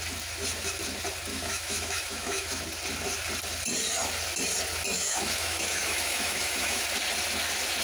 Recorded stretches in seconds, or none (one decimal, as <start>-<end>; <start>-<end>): 0.0-1.3; 2.6-4.9; 6.8-7.8